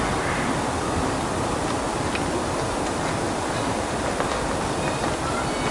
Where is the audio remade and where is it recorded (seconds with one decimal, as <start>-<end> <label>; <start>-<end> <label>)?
0.0-5.7 recorded